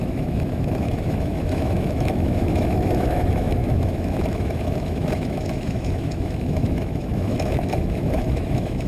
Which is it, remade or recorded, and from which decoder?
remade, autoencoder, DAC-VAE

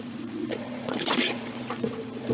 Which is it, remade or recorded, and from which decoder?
remade, vocoder, Vocos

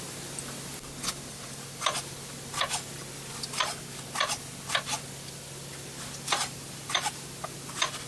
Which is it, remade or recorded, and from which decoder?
recorded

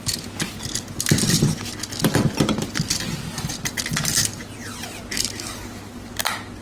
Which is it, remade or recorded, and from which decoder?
recorded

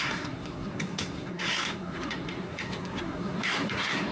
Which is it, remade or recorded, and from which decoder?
remade, codec, SNAC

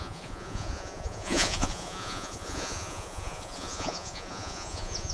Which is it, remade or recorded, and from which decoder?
remade, vocoder, Vocos